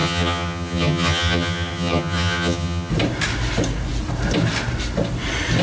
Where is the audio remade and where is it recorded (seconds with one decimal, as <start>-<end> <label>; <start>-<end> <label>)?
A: 0.0-2.9 remade; 2.9-5.6 recorded